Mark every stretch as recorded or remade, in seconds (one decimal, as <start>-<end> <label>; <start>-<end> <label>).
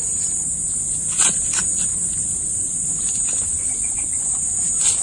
0.0-0.7 remade; 0.7-1.9 recorded; 1.9-2.9 remade; 2.9-5.0 recorded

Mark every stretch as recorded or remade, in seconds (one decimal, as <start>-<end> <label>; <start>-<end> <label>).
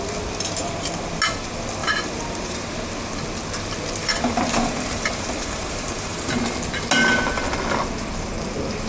0.0-1.8 recorded; 1.8-2.7 remade; 2.7-4.0 recorded; 4.0-6.4 remade; 6.4-8.9 recorded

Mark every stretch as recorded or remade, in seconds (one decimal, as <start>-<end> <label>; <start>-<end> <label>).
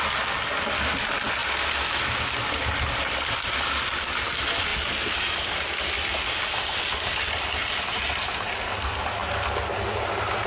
0.0-10.5 recorded